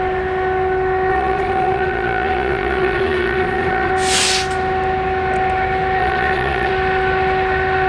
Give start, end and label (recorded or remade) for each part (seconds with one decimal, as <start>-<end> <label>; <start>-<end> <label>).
0.0-1.1 recorded; 1.1-3.9 remade; 3.9-6.0 recorded; 6.0-6.7 remade; 6.7-7.9 recorded